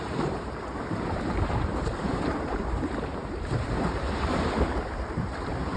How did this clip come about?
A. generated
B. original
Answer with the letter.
A